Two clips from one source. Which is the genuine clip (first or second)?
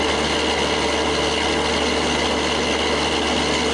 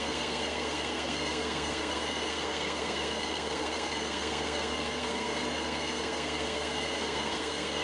first